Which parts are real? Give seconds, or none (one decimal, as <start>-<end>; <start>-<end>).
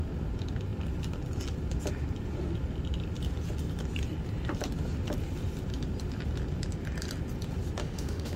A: 0.0-7.8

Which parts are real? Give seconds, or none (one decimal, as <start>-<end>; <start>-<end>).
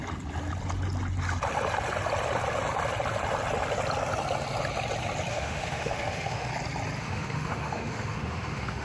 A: 0.0-5.3; 6.5-7.0